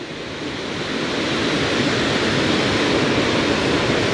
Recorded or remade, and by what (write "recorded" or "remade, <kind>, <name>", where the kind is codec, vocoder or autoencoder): recorded